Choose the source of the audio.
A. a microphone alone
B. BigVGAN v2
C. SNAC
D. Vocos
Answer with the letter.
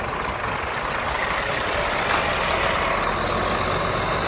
A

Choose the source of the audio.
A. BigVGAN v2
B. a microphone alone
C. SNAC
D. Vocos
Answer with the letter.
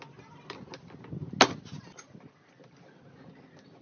B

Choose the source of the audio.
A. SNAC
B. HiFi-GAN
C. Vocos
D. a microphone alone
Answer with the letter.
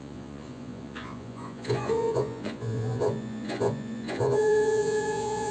C